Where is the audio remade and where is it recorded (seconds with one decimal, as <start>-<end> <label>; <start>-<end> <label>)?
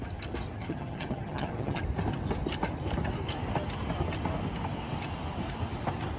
0.0-0.6 recorded; 0.6-1.8 remade; 1.8-6.2 recorded